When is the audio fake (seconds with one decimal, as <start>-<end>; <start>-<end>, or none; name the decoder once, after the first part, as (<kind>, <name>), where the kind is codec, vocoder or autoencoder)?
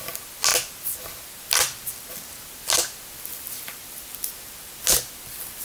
none